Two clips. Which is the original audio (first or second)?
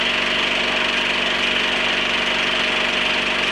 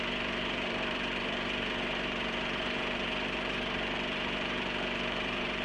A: first